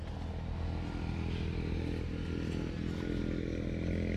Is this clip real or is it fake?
real